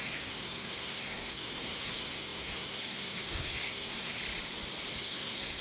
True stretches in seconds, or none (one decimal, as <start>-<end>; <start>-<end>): 4.2-5.0

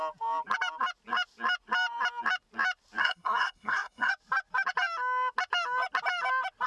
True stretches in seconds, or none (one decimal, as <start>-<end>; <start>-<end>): 0.0-3.0; 4.1-6.7

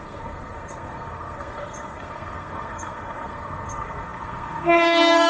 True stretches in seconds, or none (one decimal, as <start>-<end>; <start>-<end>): none